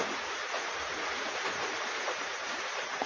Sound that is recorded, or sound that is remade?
remade